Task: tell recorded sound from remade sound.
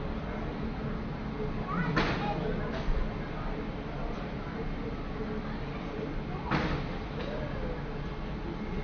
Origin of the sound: recorded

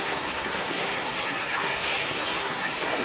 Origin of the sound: remade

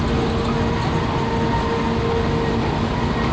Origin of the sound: recorded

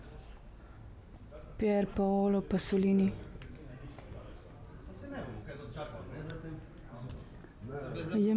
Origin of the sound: recorded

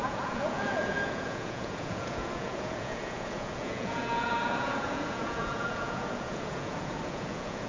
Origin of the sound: remade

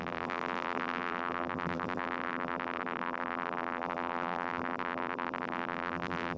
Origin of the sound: remade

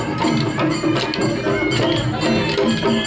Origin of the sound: recorded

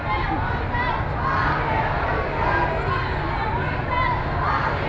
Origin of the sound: recorded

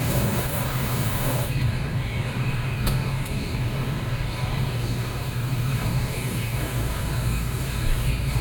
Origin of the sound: remade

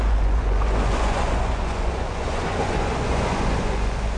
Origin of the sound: remade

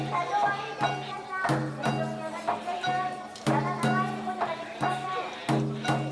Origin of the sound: recorded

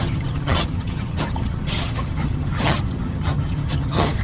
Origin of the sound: remade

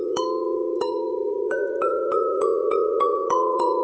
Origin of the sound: remade